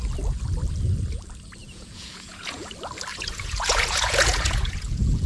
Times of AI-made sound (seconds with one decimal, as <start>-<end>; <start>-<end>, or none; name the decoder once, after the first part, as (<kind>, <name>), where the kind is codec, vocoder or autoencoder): 1.6-2.7 (vocoder, Vocos); 3.1-5.3